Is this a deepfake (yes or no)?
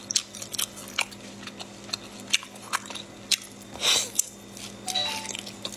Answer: no